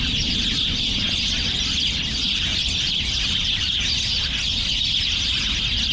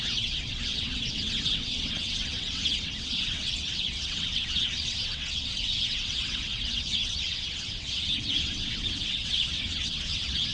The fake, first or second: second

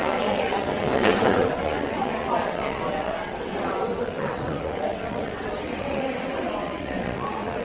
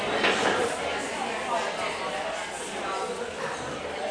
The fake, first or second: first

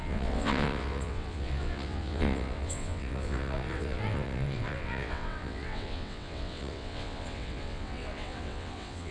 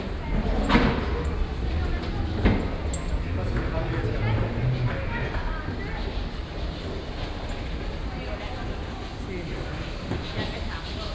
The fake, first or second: first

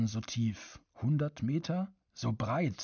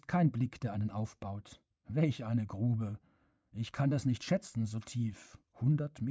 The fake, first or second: second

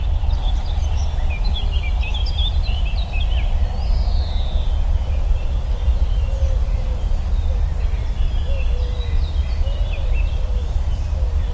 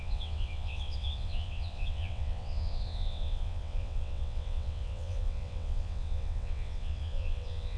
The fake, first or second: second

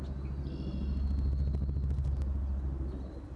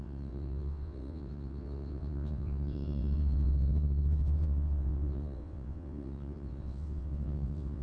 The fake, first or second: second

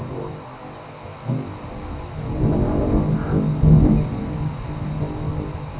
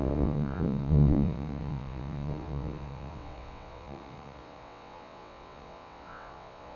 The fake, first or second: second